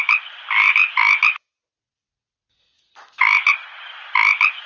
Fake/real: real